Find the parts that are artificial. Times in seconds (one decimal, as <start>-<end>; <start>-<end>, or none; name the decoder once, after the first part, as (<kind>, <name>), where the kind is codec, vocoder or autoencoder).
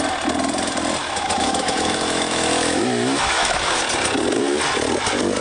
1.0-3.8 (autoencoder, DAC-VAE)